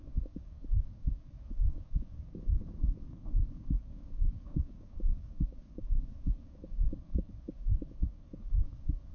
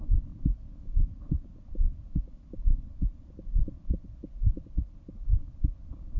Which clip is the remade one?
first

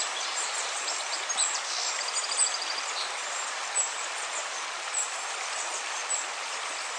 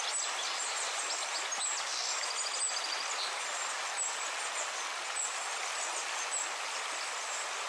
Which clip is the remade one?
first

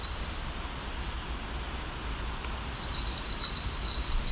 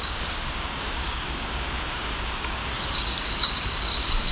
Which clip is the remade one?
second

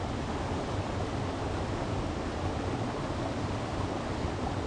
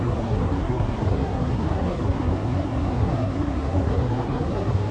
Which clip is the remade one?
second